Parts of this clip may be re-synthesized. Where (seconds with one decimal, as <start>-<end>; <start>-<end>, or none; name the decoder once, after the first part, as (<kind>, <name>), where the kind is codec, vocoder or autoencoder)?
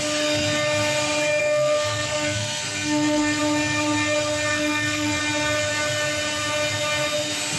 1.4-3.4 (codec, SNAC); 4.5-5.2